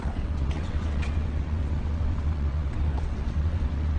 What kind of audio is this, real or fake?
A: fake